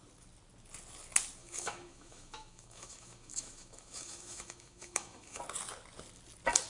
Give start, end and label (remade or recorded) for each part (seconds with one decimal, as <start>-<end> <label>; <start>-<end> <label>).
0.0-1.4 recorded; 1.4-5.4 remade; 5.4-6.7 recorded